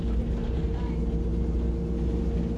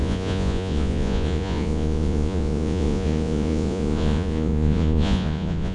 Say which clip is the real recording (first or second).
first